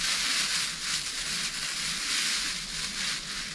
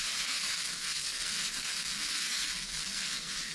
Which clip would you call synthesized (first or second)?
second